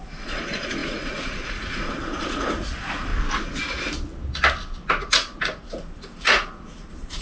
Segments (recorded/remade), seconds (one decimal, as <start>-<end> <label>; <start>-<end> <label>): 0.0-3.1 remade; 3.1-5.1 recorded; 5.1-7.2 remade